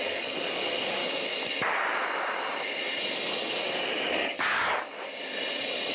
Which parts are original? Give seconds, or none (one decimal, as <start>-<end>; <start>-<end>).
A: 1.0-4.1; 4.9-5.9